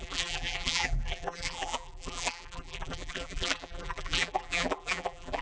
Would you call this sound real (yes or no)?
no